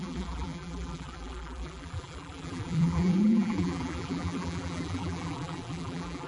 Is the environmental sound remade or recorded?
remade